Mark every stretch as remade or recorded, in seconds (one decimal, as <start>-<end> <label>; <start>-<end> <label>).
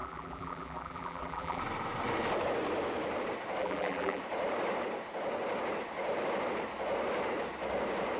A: 0.0-1.6 remade; 1.6-3.6 recorded; 3.6-4.2 remade; 4.2-8.2 recorded